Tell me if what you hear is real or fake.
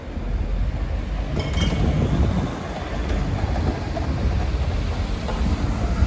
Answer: real